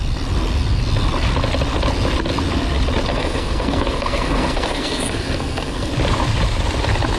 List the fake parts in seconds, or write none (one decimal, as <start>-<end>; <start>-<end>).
3.1-5.9